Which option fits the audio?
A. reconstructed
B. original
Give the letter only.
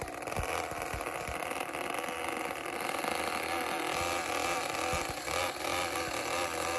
B